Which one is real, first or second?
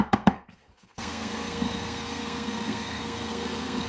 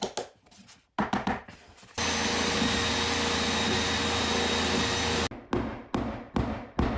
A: second